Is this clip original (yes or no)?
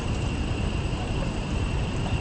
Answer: no